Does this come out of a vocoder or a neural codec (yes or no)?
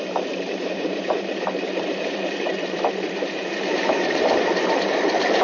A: yes